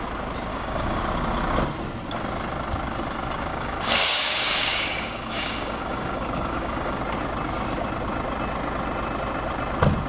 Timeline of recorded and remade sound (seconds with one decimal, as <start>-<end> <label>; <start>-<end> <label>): 0.0-0.5 recorded; 0.5-1.0 remade; 1.0-3.5 recorded; 3.5-7.0 remade; 7.0-10.1 recorded